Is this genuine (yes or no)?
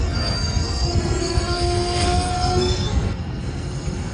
no